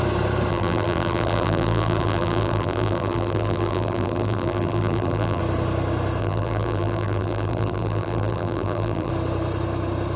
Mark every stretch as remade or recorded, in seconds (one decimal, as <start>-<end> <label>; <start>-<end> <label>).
0.0-0.5 recorded; 0.5-5.4 remade; 5.4-6.2 recorded; 6.2-9.1 remade; 9.1-10.2 recorded

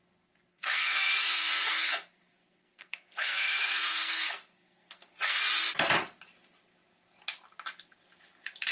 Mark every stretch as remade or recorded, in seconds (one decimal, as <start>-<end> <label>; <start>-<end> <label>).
0.0-0.5 recorded; 0.5-5.4 remade; 5.4-8.7 recorded

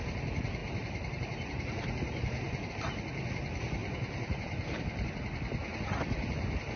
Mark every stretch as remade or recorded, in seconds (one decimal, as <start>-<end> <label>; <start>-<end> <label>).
0.0-0.6 recorded; 0.6-2.7 remade; 2.7-3.8 recorded; 3.8-5.1 remade; 5.1-6.8 recorded

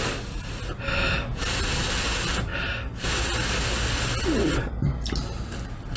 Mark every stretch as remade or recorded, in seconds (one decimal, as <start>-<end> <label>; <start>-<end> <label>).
0.0-6.0 recorded

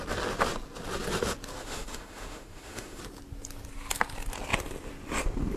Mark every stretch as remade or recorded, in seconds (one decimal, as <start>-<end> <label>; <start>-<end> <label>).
0.0-1.6 recorded; 1.6-3.0 remade; 3.0-5.6 recorded

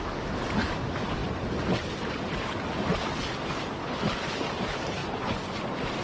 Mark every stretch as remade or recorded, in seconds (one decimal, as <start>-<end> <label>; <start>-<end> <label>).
0.0-5.0 recorded; 5.0-5.6 remade; 5.6-6.0 recorded